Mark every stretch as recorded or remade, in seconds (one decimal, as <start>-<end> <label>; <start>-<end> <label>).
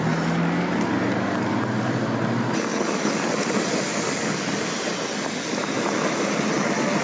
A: 0.0-7.0 recorded